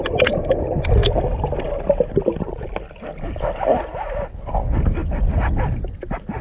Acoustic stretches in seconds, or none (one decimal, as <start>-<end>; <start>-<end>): 0.0-6.4